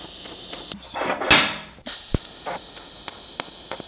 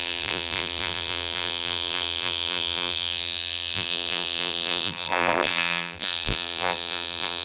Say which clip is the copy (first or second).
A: second